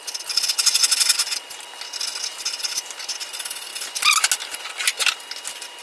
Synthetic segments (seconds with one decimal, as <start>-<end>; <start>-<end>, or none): none